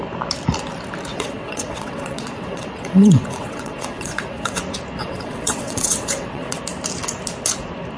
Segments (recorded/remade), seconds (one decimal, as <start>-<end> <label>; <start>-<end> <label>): 0.0-1.1 recorded; 1.1-4.6 remade; 4.6-5.0 recorded; 5.0-6.6 remade; 6.6-8.0 recorded